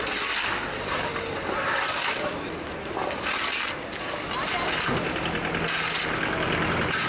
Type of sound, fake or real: real